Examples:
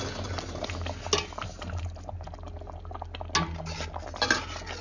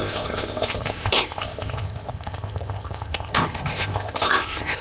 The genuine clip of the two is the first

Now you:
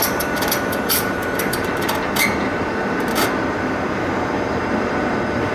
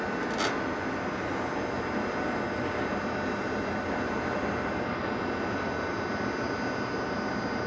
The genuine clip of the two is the second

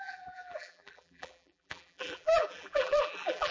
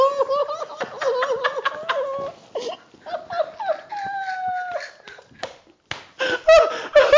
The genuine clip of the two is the second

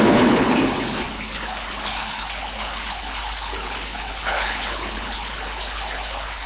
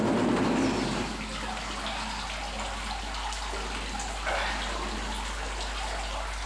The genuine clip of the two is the second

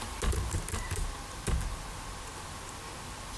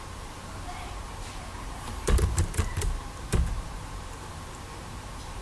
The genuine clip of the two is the first